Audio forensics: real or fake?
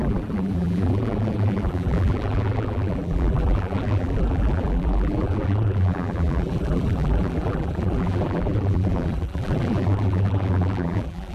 fake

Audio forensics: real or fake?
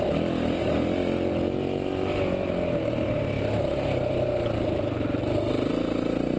real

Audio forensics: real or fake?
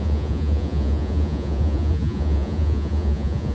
fake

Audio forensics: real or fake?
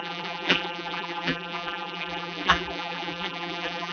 fake